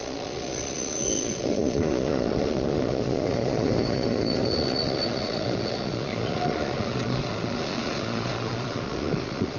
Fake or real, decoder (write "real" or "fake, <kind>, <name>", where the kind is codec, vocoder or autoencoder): fake, vocoder, Vocos